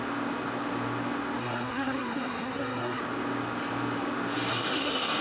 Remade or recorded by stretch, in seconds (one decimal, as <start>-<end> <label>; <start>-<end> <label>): 0.0-1.4 recorded; 1.4-3.0 remade; 3.0-4.5 recorded; 4.5-5.2 remade